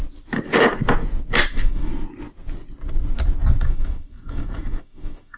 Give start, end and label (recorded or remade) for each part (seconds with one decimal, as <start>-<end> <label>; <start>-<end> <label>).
0.0-1.5 recorded; 1.5-1.9 remade; 1.9-3.6 recorded; 3.6-5.4 remade